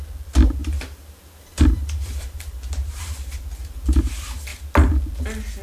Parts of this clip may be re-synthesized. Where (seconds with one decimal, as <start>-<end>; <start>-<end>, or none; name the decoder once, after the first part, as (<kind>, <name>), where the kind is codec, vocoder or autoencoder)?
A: 0.6-4.0 (vocoder, BigVGAN v2)